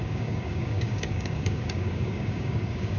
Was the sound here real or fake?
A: fake